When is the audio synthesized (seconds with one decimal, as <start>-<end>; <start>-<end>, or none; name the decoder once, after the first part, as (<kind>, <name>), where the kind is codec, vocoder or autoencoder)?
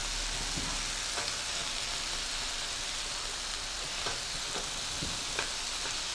none